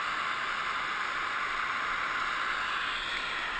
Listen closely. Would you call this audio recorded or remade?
recorded